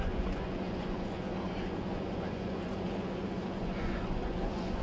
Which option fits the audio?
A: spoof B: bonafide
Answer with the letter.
A